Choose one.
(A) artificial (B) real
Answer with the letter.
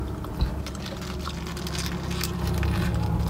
B